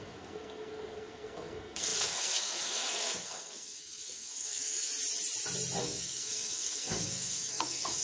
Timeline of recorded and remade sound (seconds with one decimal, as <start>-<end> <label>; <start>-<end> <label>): 0.0-4.9 remade; 4.9-5.8 recorded; 5.8-8.0 remade